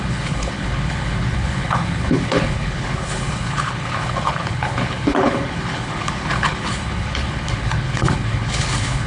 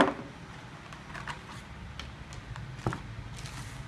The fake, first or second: first